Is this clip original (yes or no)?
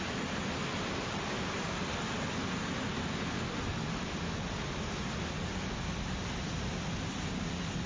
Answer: yes